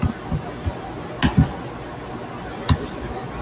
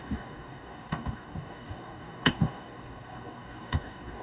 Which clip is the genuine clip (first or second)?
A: first